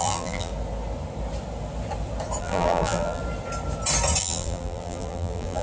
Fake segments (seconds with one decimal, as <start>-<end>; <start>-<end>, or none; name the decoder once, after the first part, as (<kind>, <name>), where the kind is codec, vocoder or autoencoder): 0.0-0.5 (vocoder, BigVGAN v2); 2.4-3.2; 4.2-5.6